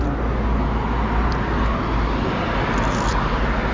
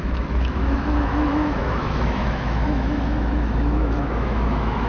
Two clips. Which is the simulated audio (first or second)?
second